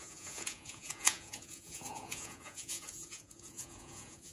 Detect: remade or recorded remade